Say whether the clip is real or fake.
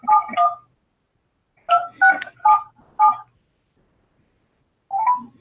real